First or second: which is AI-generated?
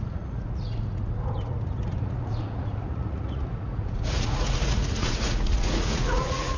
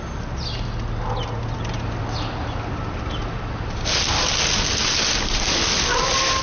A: first